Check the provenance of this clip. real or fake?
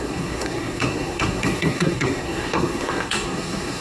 fake